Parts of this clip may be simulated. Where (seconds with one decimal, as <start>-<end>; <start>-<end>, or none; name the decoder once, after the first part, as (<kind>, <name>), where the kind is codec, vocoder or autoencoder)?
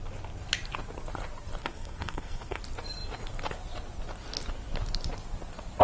1.6-2.6 (codec, SNAC)